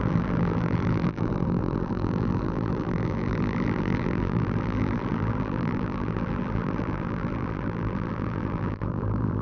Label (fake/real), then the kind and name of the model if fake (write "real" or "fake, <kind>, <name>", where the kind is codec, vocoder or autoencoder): fake, vocoder, BigVGAN v2